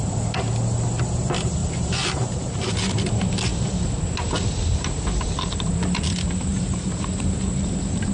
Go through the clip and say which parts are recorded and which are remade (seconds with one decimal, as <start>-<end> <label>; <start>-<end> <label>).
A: 0.0-1.6 recorded; 1.6-2.7 remade; 2.7-6.5 recorded; 6.5-7.4 remade; 7.4-8.1 recorded